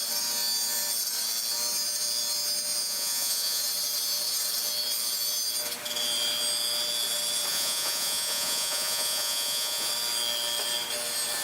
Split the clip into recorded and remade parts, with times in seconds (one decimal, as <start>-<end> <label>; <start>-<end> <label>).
0.0-2.8 recorded; 2.8-3.6 remade; 3.6-7.5 recorded; 7.5-9.9 remade; 9.9-11.4 recorded